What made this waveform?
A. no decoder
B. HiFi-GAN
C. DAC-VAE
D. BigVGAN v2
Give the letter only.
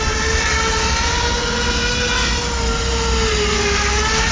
A